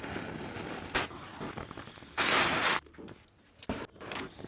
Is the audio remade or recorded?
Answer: recorded